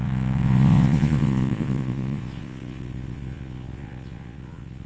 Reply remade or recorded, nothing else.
remade